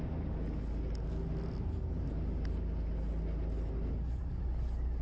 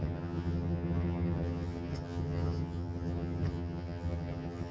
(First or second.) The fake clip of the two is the second